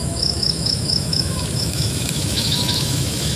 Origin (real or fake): fake